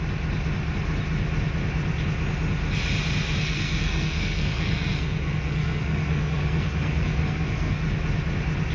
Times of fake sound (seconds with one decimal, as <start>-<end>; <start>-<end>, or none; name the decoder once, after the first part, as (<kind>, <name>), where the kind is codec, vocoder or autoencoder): 3.4-7.8 (codec, SNAC)